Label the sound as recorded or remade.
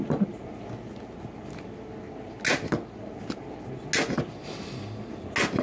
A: recorded